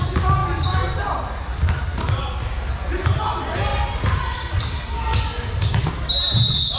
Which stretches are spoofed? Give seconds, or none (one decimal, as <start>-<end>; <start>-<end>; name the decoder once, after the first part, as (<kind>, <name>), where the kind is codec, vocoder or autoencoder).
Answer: none